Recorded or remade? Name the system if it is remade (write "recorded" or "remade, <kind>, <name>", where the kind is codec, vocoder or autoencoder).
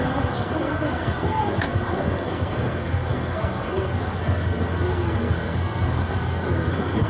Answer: remade, codec, SNAC